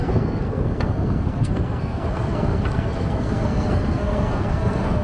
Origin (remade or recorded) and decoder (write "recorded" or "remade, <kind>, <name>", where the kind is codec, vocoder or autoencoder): remade, codec, SNAC